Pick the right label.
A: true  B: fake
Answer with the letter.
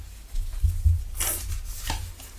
A